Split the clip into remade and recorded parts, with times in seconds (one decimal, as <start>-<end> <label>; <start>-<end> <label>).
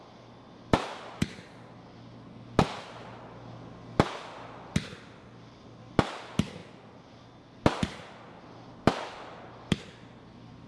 0.0-10.7 recorded